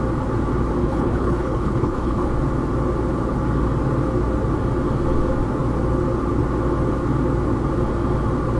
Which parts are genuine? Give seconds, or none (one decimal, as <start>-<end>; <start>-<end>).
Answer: 0.0-0.8; 2.3-8.6